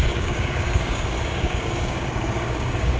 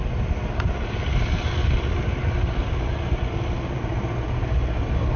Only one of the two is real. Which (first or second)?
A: second